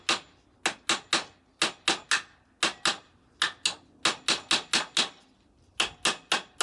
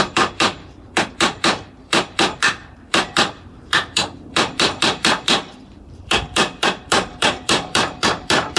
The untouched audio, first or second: first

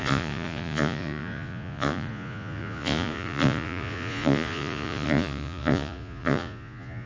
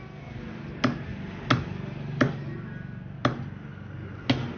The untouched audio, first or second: second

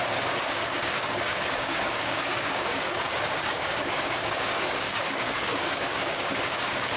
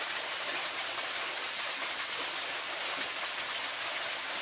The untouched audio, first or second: second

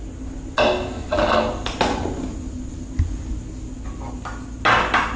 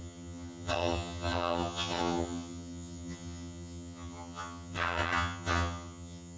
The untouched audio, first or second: first